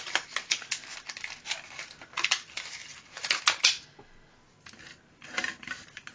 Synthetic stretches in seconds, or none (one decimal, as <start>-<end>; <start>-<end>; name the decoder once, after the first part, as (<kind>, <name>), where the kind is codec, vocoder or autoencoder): none

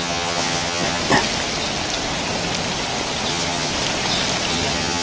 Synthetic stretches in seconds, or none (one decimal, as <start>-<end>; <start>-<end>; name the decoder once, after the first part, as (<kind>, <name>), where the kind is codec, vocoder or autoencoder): 0.0-1.0 (vocoder, HiFi-GAN); 3.3-3.7; 4.5-5.0